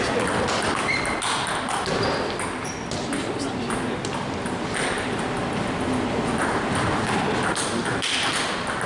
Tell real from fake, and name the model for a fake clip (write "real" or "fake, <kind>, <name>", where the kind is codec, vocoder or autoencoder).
real